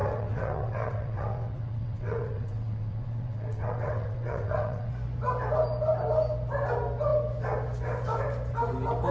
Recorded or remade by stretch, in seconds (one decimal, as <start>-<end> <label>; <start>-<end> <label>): 0.0-4.9 remade; 4.9-9.1 recorded